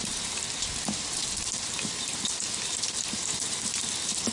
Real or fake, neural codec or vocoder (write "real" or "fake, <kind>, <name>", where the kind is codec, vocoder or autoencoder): real